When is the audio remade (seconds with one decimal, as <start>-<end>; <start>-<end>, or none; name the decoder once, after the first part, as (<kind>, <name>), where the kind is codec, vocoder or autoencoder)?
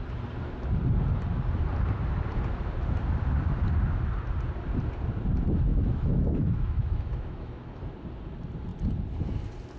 5.7-7.8 (autoencoder, DAC-VAE)